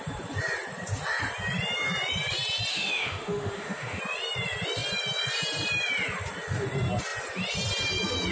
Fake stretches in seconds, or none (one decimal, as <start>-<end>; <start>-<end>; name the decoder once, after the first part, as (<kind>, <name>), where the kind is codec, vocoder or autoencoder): 2.7-4.0 (autoencoder, DAC-VAE)